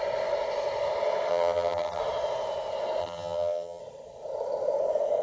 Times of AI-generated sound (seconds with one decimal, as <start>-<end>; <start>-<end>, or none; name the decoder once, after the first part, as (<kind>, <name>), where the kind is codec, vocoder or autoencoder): 1.3-2.0 (vocoder, HiFi-GAN); 3.0-3.8